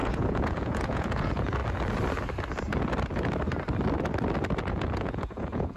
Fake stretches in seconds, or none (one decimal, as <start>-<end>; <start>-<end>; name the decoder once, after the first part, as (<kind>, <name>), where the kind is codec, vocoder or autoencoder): 0.0-1.6 (vocoder, Vocos); 4.7-5.8